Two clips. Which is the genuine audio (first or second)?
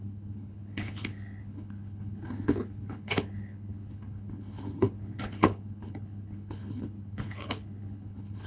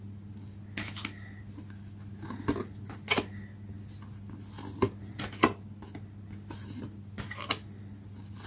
second